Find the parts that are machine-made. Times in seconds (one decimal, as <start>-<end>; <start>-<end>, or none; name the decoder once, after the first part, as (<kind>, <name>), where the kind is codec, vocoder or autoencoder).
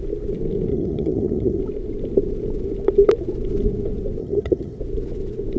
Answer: 0.7-1.6 (vocoder, HiFi-GAN); 4.2-4.8